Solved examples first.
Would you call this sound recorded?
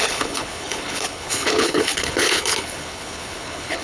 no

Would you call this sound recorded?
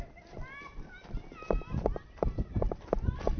yes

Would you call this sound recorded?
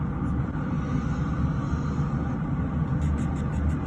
yes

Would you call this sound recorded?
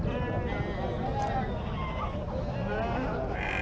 yes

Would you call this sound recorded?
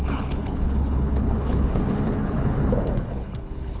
no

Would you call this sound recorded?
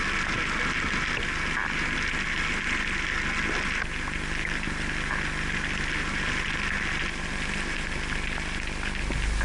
yes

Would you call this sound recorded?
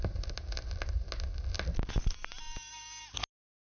yes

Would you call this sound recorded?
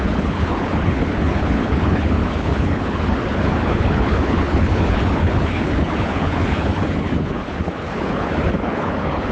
no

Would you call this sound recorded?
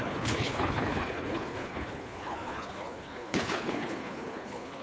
no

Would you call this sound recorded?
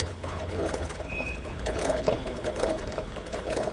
no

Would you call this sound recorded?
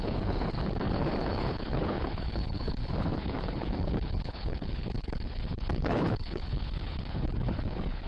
no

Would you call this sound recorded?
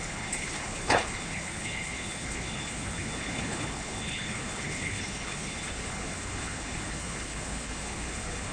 no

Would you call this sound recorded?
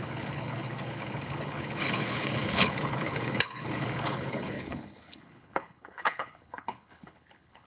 no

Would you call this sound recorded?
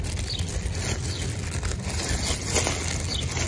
yes